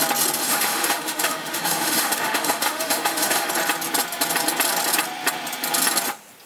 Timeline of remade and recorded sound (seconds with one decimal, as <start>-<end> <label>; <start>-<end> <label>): 0.0-0.4 recorded; 0.4-3.5 remade; 3.5-6.5 recorded